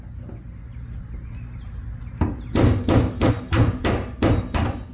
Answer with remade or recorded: recorded